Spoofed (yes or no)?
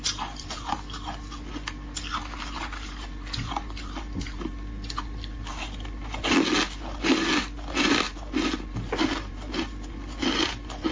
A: no